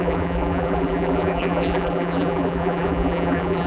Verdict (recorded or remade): remade